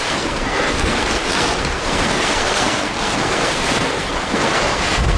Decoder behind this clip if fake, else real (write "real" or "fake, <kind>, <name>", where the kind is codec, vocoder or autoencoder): fake, codec, SNAC